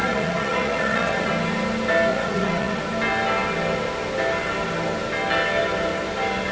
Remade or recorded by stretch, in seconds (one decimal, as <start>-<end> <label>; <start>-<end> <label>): 0.0-1.3 remade; 1.3-2.1 recorded; 2.1-2.8 remade; 2.8-6.5 recorded

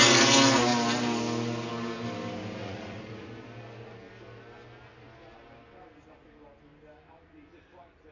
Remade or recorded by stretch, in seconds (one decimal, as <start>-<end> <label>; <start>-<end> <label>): 0.0-2.6 recorded; 2.6-3.3 remade; 3.3-8.1 recorded